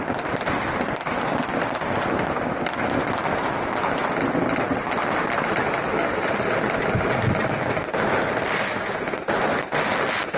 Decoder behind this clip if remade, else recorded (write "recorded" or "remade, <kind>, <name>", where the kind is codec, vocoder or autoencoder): recorded